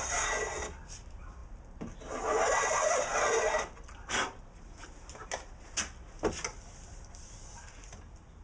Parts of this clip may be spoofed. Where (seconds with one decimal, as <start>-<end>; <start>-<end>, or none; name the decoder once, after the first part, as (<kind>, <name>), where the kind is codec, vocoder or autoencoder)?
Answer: none